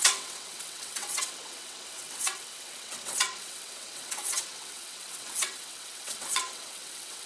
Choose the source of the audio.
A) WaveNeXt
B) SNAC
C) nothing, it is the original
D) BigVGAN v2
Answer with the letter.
A